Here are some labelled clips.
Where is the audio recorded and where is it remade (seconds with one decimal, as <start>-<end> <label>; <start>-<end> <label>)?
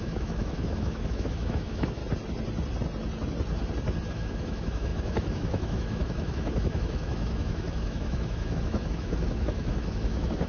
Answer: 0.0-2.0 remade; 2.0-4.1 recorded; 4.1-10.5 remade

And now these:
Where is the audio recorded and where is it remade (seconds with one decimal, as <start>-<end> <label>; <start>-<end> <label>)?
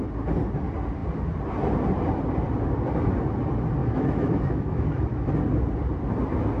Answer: 0.0-3.8 recorded; 3.8-5.3 remade; 5.3-6.6 recorded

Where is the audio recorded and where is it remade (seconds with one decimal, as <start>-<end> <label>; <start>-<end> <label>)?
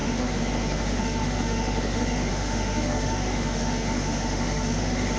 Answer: 0.0-5.2 remade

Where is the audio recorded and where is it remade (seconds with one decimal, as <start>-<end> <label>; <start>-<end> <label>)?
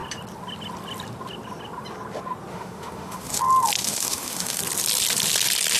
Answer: 0.0-2.5 recorded; 2.5-3.4 remade; 3.4-3.8 recorded; 3.8-4.6 remade; 4.6-5.8 recorded